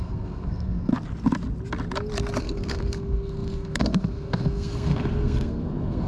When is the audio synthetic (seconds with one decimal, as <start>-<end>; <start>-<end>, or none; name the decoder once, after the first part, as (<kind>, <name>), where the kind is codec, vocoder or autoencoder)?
0.0-0.9 (codec, SNAC); 2.4-6.1